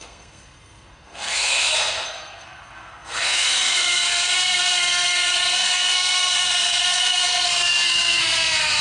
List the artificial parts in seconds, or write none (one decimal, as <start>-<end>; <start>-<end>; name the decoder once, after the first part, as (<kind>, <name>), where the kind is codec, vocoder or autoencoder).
0.0-8.8 (codec, SNAC)